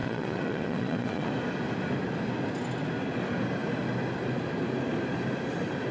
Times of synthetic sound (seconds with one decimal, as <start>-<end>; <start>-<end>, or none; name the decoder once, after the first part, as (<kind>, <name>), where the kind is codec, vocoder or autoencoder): 0.0-1.3 (vocoder, Vocos)